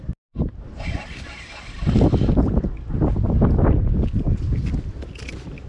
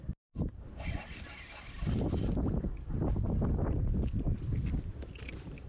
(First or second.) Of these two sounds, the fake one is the second